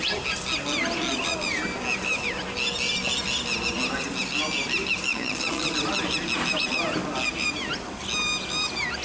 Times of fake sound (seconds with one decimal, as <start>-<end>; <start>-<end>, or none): 5.1-5.7